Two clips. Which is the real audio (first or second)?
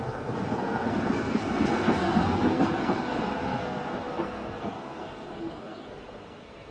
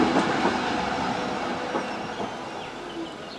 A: second